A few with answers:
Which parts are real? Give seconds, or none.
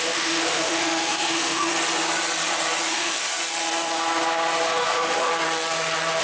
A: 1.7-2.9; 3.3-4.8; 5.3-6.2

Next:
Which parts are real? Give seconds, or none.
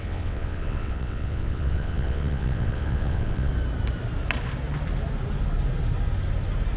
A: 3.5-6.8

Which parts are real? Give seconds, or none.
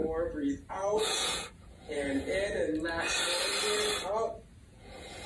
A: 0.0-0.7; 2.7-4.6